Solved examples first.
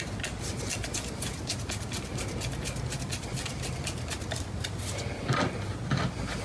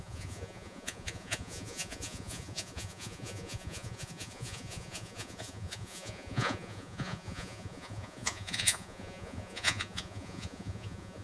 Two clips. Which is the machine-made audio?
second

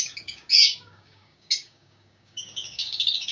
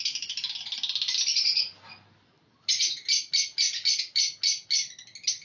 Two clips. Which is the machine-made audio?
first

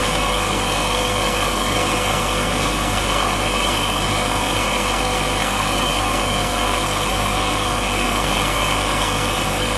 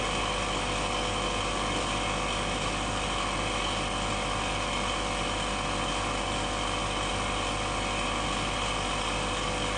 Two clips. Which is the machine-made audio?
first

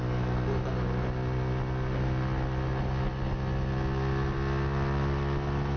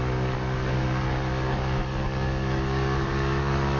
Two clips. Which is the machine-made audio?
second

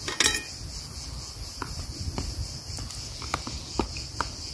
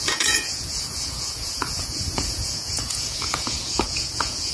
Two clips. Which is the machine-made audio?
second